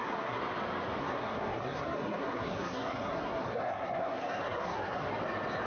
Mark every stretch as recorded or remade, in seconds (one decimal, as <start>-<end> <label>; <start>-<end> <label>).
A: 0.0-0.4 remade; 0.4-1.0 recorded; 1.0-5.1 remade; 5.1-5.7 recorded